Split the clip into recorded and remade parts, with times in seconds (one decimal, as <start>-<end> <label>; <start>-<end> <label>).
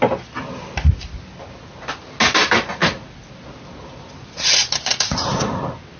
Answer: 0.0-4.9 recorded; 4.9-5.5 remade; 5.5-6.0 recorded